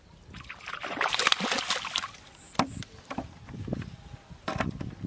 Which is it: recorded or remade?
recorded